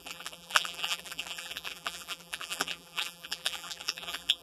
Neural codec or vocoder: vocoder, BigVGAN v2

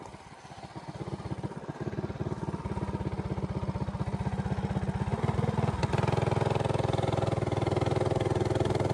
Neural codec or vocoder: none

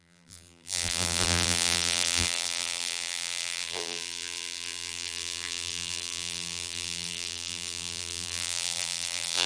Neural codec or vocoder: vocoder, BigVGAN v2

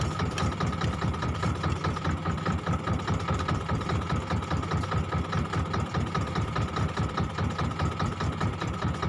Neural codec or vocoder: vocoder, BigVGAN v2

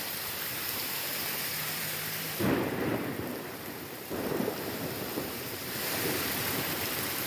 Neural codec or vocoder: vocoder, BigVGAN v2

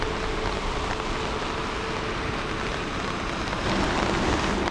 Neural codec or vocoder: none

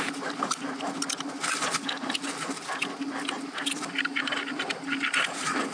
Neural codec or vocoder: vocoder, BigVGAN v2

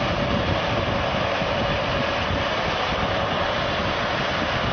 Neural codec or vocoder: vocoder, BigVGAN v2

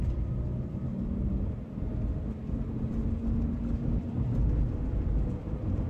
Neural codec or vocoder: none